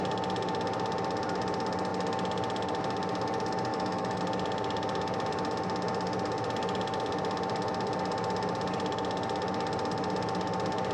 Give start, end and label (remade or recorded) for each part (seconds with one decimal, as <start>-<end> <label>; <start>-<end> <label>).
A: 0.0-3.7 recorded; 3.7-4.2 remade; 4.2-10.9 recorded